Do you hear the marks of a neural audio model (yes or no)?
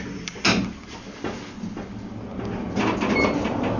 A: no